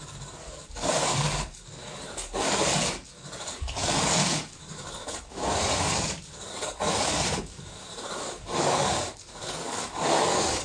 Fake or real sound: fake